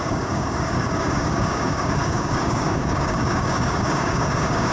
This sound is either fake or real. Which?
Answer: fake